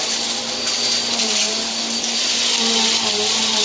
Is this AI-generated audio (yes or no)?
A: no